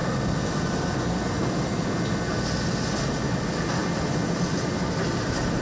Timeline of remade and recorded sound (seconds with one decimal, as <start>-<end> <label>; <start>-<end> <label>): 0.0-3.8 recorded; 3.8-4.7 remade; 4.7-5.6 recorded